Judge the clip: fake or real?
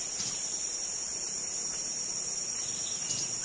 real